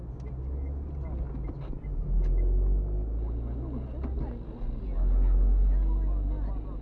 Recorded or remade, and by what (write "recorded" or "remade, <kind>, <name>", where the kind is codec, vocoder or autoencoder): recorded